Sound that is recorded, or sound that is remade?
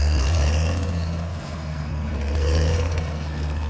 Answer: remade